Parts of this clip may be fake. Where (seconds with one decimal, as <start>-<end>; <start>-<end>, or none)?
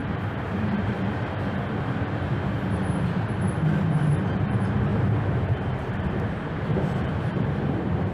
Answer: 0.0-0.9; 4.9-8.1